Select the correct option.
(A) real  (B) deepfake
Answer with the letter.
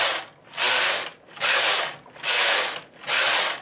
A